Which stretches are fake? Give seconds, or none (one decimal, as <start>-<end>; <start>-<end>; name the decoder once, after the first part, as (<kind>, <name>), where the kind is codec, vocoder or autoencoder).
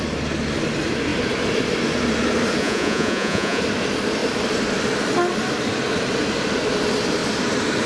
2.6-3.6 (vocoder, Vocos)